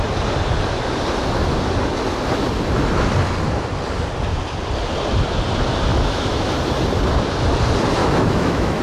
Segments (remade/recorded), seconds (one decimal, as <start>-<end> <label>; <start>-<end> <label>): 0.0-5.9 recorded; 5.9-6.5 remade; 6.5-8.0 recorded; 8.0-8.8 remade